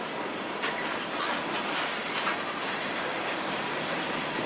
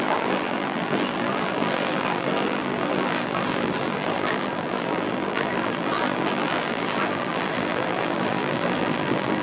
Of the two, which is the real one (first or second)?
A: first